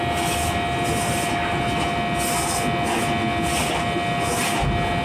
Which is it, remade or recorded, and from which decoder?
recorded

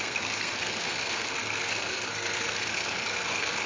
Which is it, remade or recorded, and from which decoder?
remade, codec, SNAC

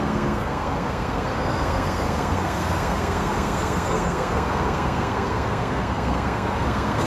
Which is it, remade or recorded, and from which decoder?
remade, codec, SNAC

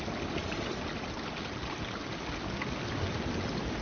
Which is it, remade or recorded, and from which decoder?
recorded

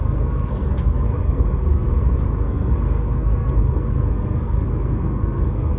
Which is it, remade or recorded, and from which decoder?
remade, codec, SNAC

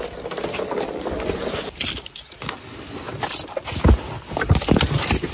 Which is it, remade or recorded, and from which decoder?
recorded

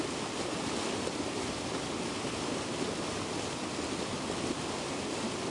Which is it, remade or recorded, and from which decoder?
recorded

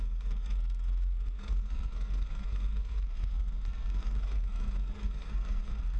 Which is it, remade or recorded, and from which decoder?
remade, codec, SNAC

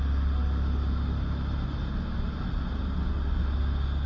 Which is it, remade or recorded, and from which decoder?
recorded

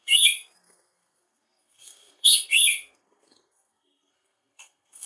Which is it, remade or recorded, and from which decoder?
remade, codec, SNAC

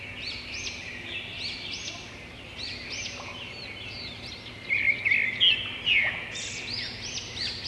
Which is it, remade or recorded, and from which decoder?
recorded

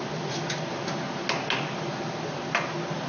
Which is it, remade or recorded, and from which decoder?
recorded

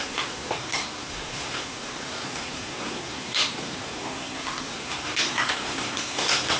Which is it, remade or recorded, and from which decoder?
remade, codec, SNAC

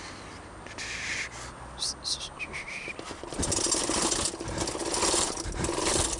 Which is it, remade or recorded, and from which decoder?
recorded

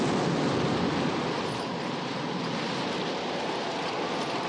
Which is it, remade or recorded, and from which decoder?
recorded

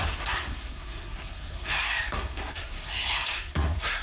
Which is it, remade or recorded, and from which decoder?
remade, codec, SNAC